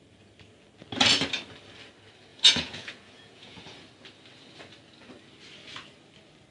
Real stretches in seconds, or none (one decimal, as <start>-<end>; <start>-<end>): 0.0-2.3; 3.6-6.5

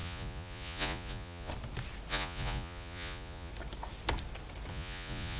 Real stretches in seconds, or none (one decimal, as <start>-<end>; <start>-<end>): 1.5-2.1; 3.5-4.7

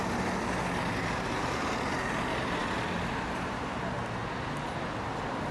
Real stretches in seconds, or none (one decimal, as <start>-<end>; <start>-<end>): 0.0-5.5

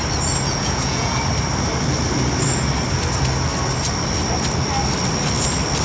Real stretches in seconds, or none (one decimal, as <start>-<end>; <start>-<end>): 0.0-0.5; 1.2-5.8

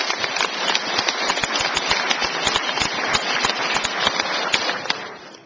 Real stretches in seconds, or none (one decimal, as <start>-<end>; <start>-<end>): 0.0-5.5

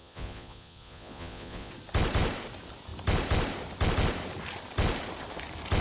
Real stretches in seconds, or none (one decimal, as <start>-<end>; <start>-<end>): 1.7-5.8

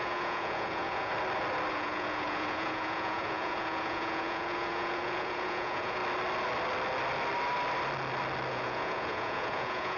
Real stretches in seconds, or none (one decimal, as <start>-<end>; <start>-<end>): 1.1-1.7; 6.0-8.5